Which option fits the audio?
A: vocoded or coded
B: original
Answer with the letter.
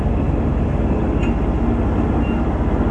B